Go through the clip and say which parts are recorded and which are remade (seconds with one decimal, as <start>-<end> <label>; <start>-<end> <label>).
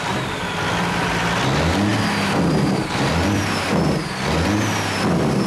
0.0-5.5 recorded